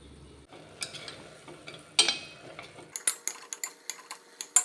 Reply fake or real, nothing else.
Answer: real